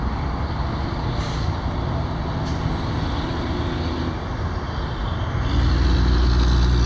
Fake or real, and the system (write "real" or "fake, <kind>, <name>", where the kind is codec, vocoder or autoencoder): real